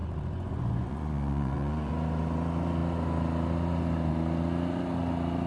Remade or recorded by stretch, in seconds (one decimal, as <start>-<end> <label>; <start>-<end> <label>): 0.0-1.9 remade; 1.9-5.5 recorded